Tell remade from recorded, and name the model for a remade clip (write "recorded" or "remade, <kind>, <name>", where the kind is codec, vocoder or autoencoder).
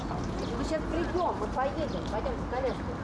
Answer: recorded